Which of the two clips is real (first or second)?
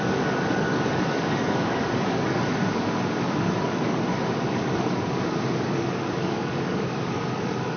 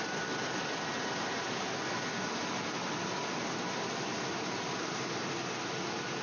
second